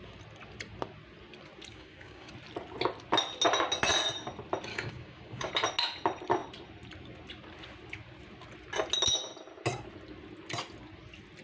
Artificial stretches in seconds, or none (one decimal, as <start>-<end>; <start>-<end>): 1.7-2.3; 4.7-5.5